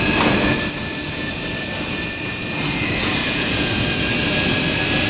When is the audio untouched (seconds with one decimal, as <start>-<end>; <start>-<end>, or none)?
0.0-3.2; 3.7-5.1